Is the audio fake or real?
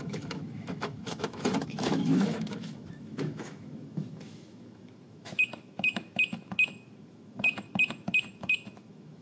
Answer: fake